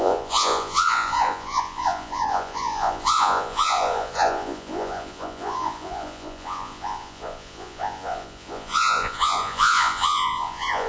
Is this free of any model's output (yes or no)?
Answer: no